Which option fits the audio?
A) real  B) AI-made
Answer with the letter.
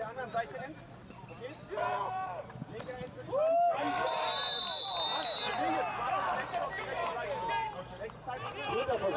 A